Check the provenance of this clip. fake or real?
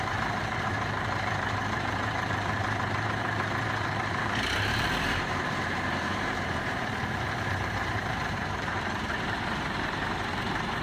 fake